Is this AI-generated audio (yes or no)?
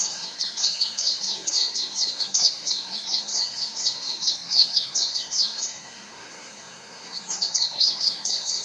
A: yes